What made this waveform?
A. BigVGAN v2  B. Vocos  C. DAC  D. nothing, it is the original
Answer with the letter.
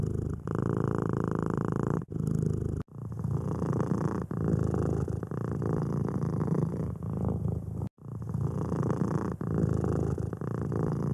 D